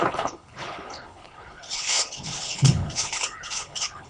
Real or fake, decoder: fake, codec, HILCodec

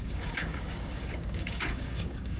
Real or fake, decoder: fake, codec, DAC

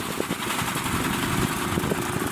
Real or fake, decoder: real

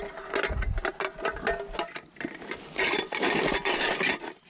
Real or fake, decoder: real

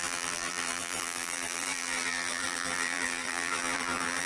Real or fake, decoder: fake, vocoder, BigVGAN v2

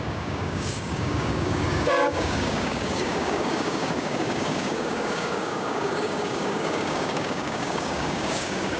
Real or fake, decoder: fake, codec, DAC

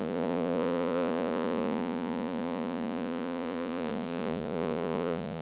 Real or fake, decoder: fake, vocoder, Vocos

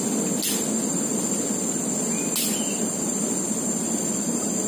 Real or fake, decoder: real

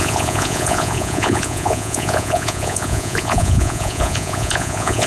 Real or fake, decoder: fake, vocoder, Vocos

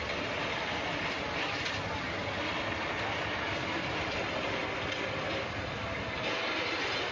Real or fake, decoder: real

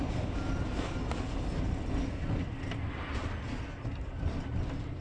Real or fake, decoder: real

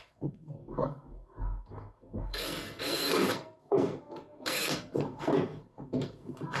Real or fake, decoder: fake, codec, SNAC